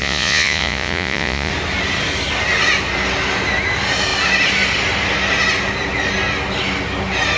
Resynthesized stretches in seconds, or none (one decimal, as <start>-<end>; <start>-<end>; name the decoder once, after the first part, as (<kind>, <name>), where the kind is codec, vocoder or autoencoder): 0.0-1.5 (vocoder, Vocos)